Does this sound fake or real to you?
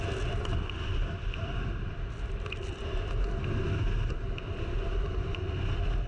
real